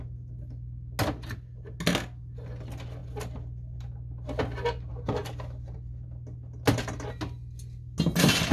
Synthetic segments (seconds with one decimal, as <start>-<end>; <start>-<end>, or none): none